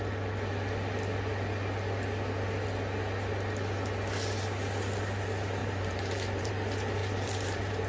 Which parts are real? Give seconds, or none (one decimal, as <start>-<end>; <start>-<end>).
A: 0.0-5.6; 6.5-7.0